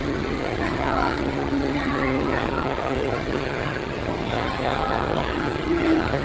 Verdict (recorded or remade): remade